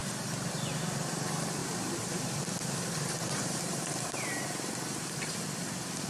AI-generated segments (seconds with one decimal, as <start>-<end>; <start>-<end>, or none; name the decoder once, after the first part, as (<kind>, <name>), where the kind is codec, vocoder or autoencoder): 1.6-5.3 (vocoder, BigVGAN v2)